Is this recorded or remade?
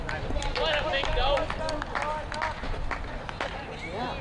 recorded